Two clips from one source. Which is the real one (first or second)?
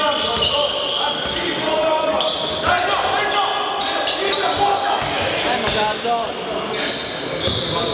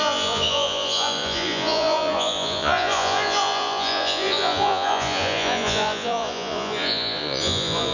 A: first